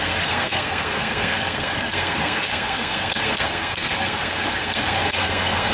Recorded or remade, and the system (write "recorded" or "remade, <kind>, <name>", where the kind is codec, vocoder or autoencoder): remade, codec, SNAC